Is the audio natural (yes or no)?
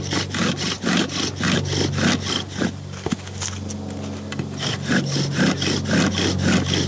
yes